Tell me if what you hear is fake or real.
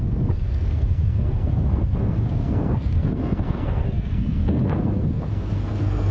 fake